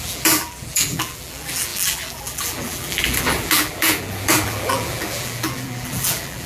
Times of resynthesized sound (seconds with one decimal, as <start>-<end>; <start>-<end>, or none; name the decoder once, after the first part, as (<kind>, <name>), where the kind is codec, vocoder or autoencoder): 0.0-6.5 (vocoder, BigVGAN v2)